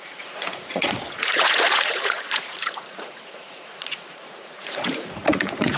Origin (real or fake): fake